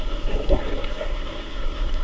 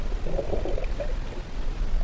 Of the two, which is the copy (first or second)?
first